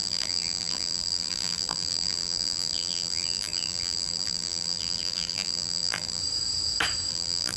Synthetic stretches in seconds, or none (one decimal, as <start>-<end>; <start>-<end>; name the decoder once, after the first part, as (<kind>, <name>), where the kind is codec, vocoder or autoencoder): 0.0-6.2 (vocoder, BigVGAN v2); 7.1-7.6